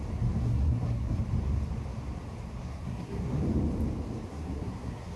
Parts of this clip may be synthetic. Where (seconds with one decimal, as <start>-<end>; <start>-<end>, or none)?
0.4-1.2; 2.6-3.4; 4.3-5.2